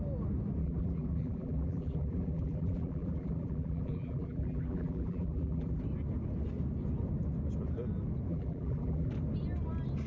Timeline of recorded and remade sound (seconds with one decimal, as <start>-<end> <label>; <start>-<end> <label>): 0.0-0.6 recorded; 0.6-5.8 remade; 5.8-8.3 recorded; 8.3-9.1 remade; 9.1-10.1 recorded